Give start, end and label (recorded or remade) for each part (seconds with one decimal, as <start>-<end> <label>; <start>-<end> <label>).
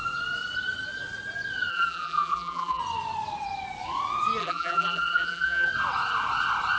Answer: 0.0-1.7 recorded; 1.7-2.8 remade; 2.8-4.4 recorded; 4.4-5.7 remade; 5.7-6.8 recorded